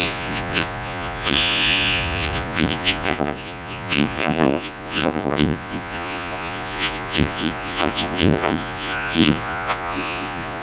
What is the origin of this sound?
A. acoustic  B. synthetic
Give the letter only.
B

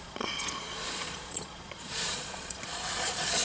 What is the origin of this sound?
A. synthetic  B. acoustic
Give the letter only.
A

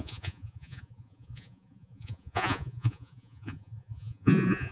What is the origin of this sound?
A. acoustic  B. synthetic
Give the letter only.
B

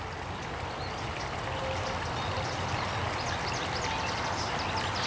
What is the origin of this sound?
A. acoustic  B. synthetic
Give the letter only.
A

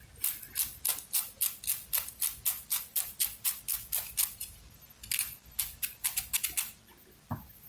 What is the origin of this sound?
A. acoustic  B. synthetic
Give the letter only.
A